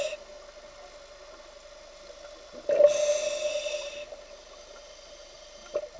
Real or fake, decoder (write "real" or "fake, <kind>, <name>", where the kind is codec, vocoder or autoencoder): real